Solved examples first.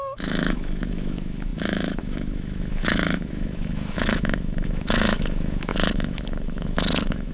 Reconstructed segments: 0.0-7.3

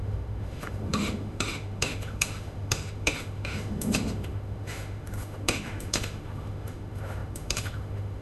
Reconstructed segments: 0.0-8.2